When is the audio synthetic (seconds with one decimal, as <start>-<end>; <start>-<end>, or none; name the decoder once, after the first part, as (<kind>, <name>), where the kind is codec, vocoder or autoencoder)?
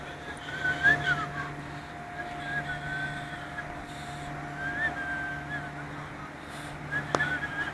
none